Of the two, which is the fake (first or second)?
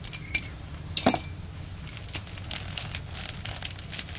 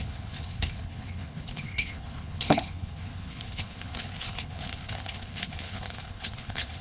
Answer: second